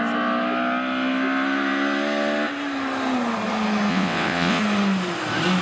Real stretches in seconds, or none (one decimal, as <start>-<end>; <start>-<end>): 0.0-3.9; 4.6-5.6